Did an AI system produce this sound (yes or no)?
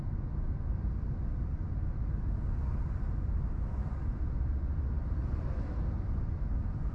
no